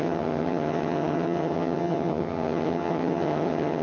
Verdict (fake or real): fake